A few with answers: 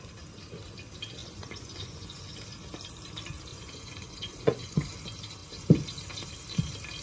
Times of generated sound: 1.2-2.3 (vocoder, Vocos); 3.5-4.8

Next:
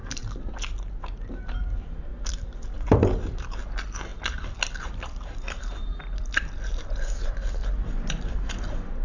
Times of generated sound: 0.0-1.3 (vocoder, BigVGAN v2); 2.1-3.6; 4.1-4.6; 6.2-8.5

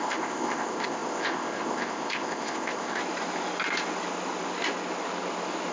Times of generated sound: 0.0-3.0 (codec, ZipCodec)

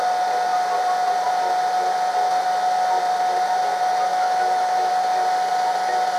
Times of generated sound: 4.1-4.9 (autoencoder, DAC-VAE)

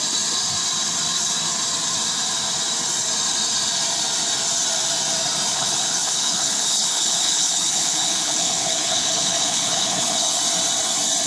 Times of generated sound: 5.5-10.4 (codec, HILCodec)

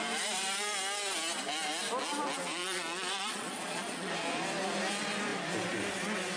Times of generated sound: 2.4-4.1 (vocoder, Vocos)

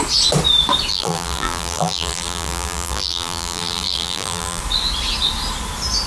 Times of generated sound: 0.9-4.6 (vocoder, BigVGAN v2)

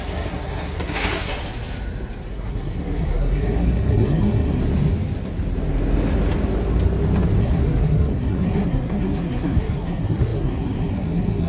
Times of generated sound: 0.0-1.3 (codec, SNAC); 2.3-4.6; 7.4-11.5